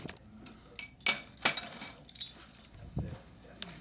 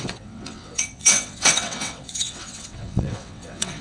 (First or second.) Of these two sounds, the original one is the first